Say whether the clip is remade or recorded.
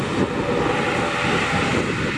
recorded